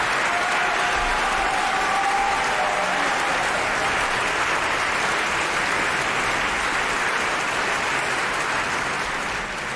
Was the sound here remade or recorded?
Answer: recorded